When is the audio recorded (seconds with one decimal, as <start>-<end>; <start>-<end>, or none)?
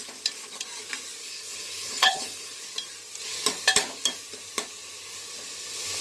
0.0-1.2; 2.6-6.0